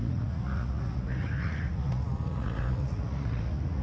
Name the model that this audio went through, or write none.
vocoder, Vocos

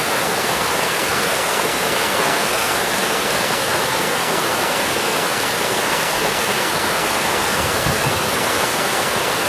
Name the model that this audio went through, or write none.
codec, SNAC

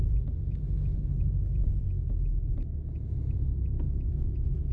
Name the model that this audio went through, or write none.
none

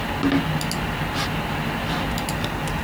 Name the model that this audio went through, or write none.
none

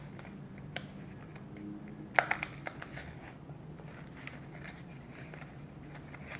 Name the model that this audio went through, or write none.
none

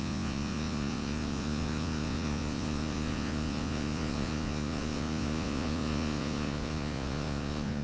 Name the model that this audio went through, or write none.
vocoder, Vocos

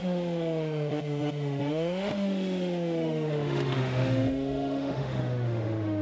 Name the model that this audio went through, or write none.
autoencoder, DAC-VAE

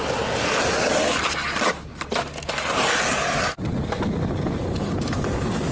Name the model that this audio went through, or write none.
none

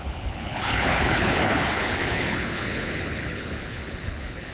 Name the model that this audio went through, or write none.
codec, HILCodec